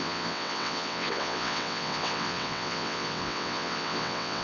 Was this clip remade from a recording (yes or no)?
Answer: yes